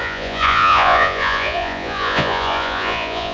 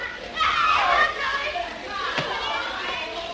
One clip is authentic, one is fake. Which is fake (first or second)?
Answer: first